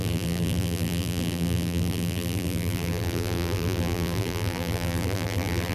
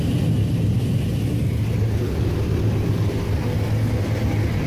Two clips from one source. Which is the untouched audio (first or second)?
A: second